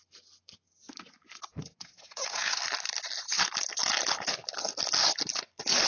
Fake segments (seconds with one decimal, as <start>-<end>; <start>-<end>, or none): 1.5-2.6